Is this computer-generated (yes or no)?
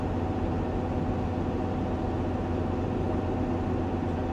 no